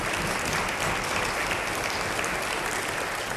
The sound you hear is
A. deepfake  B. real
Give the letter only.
B